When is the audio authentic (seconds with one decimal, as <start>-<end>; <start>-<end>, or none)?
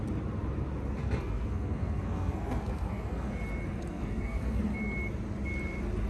0.0-1.0; 3.3-3.9; 4.6-6.1